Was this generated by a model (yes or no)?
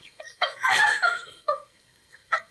yes